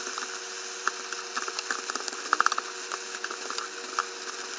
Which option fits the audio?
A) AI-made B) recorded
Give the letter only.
B